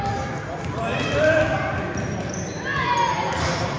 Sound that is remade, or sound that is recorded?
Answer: recorded